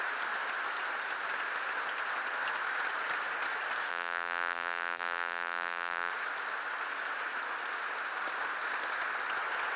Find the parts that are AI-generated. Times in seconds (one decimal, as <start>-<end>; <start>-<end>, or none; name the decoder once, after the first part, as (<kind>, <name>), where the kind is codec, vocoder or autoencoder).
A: 3.9-6.1 (vocoder, BigVGAN v2)